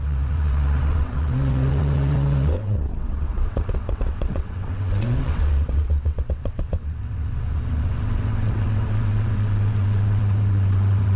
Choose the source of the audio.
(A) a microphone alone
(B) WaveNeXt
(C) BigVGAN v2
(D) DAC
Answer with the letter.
B